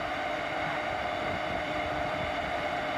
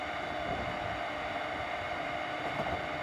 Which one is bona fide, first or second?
second